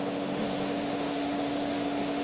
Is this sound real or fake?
fake